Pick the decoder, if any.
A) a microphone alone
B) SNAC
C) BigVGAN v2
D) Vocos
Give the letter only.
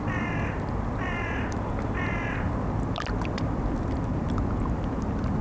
A